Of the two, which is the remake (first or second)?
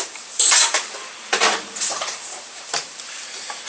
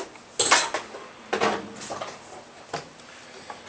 first